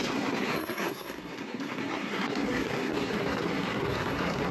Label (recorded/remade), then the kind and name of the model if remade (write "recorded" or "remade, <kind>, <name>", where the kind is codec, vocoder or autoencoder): remade, codec, SNAC